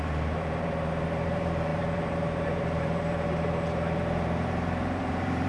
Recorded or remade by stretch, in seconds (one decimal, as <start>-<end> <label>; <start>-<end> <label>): 0.0-5.5 remade